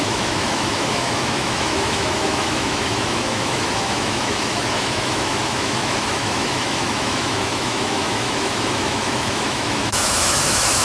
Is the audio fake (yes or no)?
yes